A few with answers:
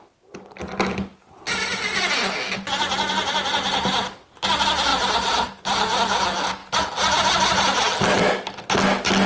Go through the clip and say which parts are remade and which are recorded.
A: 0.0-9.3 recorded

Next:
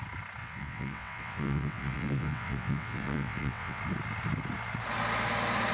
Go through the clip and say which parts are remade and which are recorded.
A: 0.0-0.4 recorded; 0.4-3.8 remade; 3.8-5.7 recorded

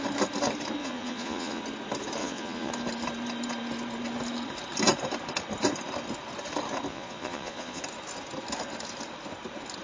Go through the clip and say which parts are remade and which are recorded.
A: 0.0-0.8 recorded; 0.8-1.6 remade; 1.6-2.2 recorded; 2.2-2.7 remade; 2.7-6.9 recorded; 6.9-7.8 remade; 7.8-9.8 recorded

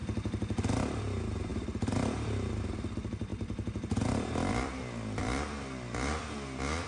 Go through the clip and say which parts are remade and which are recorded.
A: 0.0-1.5 recorded; 1.5-2.6 remade; 2.6-3.3 recorded; 3.3-4.8 remade; 4.8-5.2 recorded; 5.2-6.2 remade; 6.2-6.9 recorded

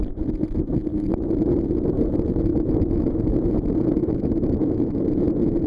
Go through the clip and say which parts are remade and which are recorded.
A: 0.0-0.9 recorded; 0.9-1.5 remade; 1.5-2.5 recorded; 2.5-3.4 remade; 3.4-4.0 recorded; 4.0-5.0 remade; 5.0-5.7 recorded